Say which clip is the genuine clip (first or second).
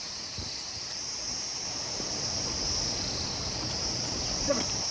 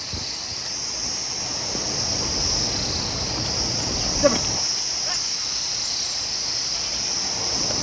second